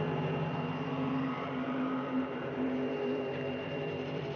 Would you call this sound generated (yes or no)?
yes